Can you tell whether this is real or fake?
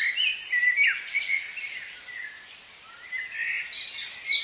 real